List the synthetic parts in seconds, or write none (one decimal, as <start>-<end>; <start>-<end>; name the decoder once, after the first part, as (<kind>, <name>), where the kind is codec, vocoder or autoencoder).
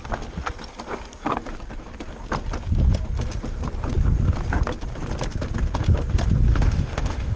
6.5-7.4 (autoencoder, DAC-VAE)